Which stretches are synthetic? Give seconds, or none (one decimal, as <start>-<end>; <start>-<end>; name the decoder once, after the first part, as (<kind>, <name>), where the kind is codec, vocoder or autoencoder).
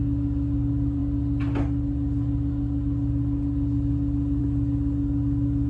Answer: none